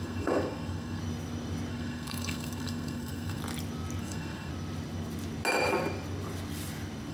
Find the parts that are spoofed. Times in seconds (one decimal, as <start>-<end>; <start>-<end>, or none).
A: 0.0-1.0; 1.7-3.4; 4.0-4.5